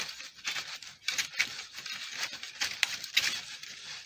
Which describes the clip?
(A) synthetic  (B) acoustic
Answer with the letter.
A